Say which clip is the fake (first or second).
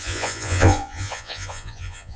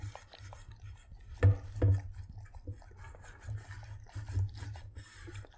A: first